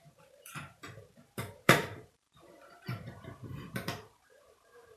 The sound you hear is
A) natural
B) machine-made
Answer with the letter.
B